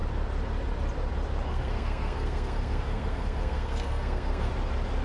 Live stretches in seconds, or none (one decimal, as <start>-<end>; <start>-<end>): 0.0-1.5; 4.5-5.0